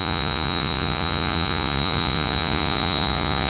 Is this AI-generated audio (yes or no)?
yes